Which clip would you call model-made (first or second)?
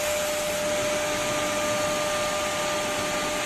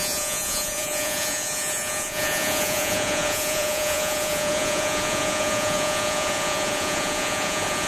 second